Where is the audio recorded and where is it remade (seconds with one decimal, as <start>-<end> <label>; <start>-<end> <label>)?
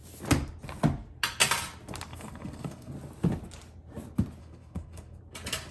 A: 0.0-2.1 recorded; 2.1-2.9 remade; 2.9-4.4 recorded; 4.4-5.2 remade; 5.2-5.7 recorded